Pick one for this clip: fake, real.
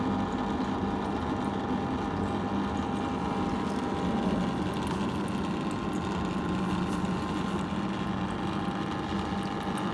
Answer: real